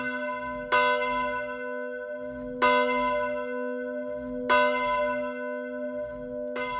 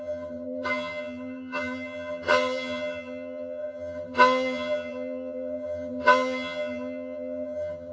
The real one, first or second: first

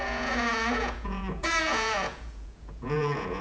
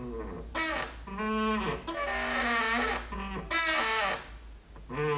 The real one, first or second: second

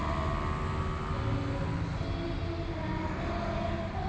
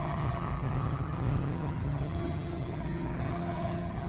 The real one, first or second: first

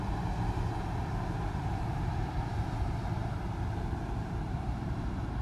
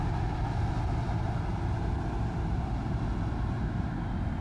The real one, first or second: second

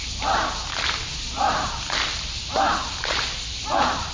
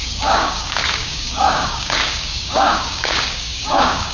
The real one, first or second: first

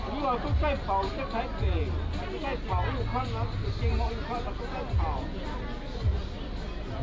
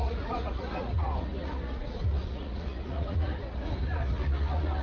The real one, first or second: first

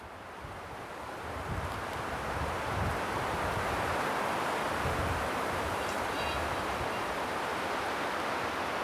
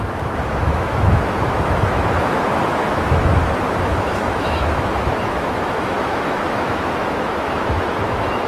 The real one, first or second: first